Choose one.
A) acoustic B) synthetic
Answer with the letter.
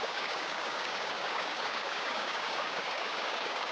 B